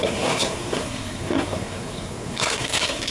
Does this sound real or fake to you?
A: fake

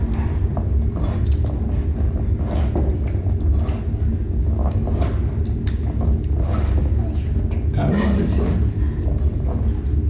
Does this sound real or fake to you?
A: real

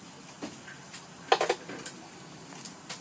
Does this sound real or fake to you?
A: real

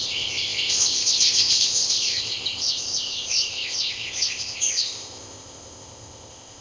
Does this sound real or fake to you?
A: fake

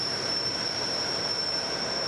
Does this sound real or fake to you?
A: fake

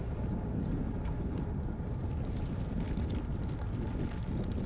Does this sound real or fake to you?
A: real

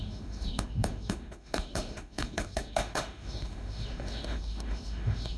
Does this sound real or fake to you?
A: fake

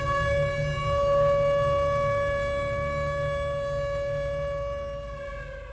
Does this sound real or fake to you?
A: real